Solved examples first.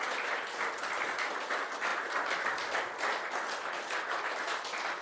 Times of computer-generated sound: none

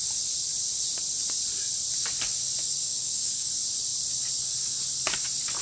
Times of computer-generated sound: 2.7-3.5 (codec, DAC)